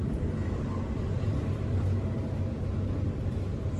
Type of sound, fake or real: fake